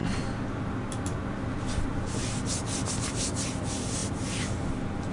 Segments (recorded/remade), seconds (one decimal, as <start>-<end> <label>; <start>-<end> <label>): 0.0-5.1 recorded